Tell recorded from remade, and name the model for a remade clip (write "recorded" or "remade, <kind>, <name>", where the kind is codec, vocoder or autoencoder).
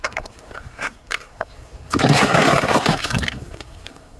remade, codec, SNAC